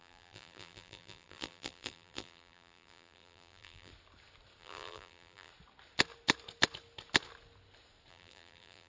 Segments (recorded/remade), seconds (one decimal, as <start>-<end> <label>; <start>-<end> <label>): 0.0-3.9 remade; 3.9-4.6 recorded; 4.6-5.5 remade; 5.5-8.1 recorded; 8.1-8.9 remade